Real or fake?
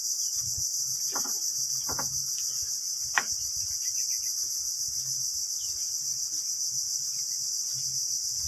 real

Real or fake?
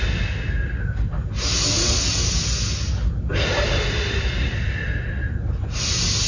real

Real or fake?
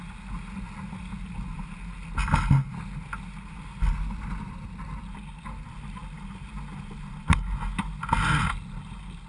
real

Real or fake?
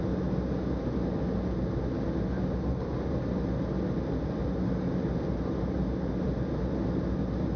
real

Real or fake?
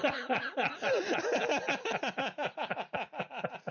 real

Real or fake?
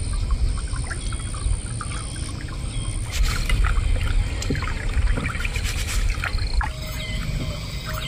real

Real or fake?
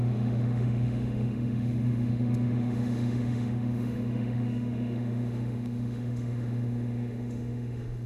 fake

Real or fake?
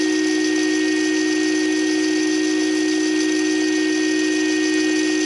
real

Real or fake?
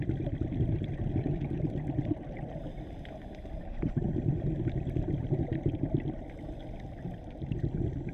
real